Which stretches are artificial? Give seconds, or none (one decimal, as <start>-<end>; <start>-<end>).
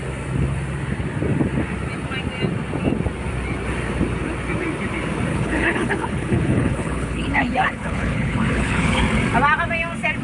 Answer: 5.3-9.0